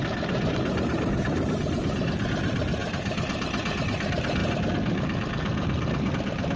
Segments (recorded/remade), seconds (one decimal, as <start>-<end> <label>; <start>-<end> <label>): 0.0-4.4 remade; 4.4-6.1 recorded; 6.1-6.6 remade